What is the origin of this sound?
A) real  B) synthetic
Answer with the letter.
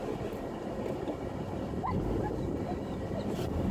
A